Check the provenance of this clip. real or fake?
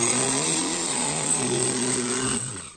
fake